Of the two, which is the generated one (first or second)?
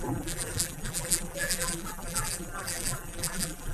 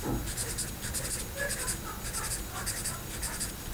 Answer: first